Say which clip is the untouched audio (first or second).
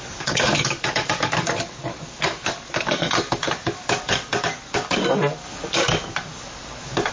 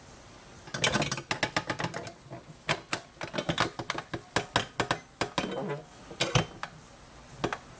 second